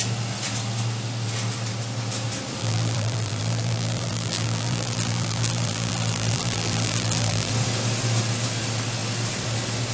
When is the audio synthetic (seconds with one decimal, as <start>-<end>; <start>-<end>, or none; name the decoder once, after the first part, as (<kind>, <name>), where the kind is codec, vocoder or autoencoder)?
2.6-7.5 (vocoder, BigVGAN v2)